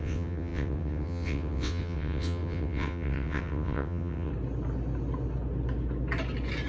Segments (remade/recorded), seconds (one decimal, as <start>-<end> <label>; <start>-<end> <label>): 0.0-4.3 remade; 4.3-6.7 recorded